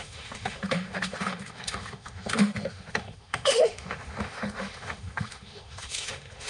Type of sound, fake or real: fake